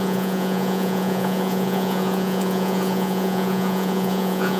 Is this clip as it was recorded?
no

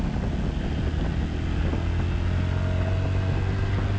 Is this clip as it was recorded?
yes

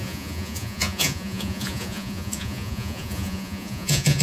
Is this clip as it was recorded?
no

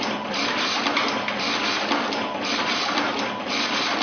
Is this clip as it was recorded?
yes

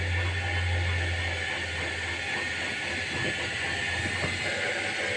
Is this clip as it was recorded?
yes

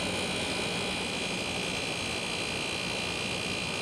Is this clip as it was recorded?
yes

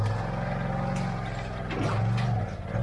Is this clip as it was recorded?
yes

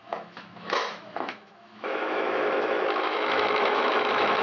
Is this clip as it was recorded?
no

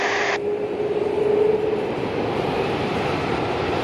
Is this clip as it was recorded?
no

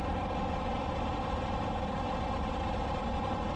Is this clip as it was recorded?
no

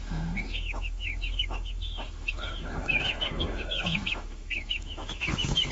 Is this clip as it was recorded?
no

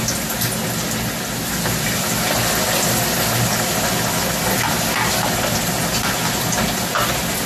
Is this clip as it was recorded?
yes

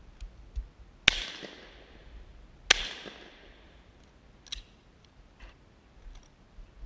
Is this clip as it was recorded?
yes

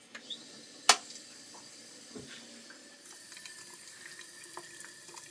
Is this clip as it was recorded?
yes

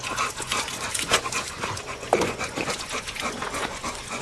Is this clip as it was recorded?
no